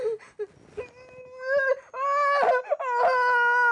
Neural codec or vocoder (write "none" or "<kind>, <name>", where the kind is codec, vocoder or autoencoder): none